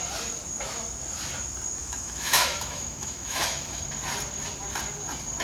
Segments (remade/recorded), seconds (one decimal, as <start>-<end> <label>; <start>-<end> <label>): 0.0-1.8 recorded; 1.8-3.8 remade; 3.8-5.4 recorded